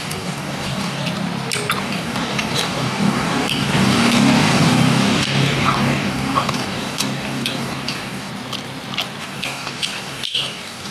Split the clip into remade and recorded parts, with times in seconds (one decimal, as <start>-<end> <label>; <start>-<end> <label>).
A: 0.0-1.0 remade; 1.0-1.8 recorded; 1.8-8.3 remade; 8.3-9.2 recorded; 9.2-10.9 remade